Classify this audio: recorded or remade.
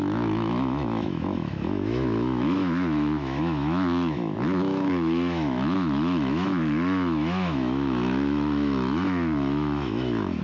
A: remade